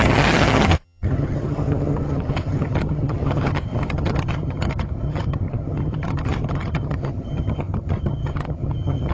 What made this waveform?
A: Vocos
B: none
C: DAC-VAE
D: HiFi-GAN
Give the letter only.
D